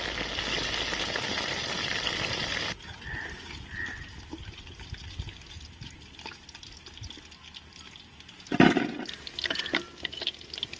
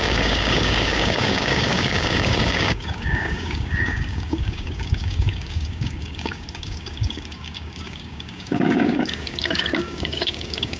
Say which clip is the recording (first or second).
first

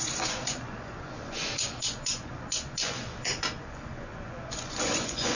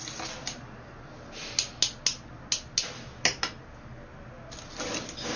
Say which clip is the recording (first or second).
second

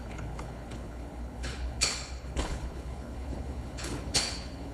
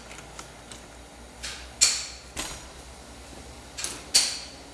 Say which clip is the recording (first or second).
second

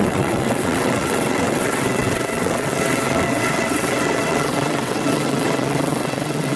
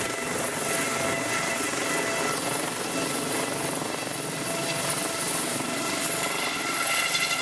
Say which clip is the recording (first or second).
second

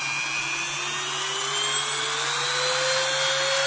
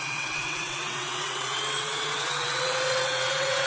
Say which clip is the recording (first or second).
first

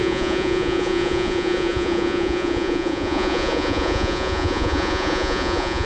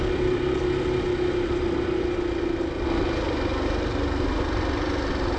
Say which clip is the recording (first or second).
second